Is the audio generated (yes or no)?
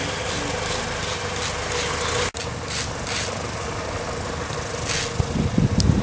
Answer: no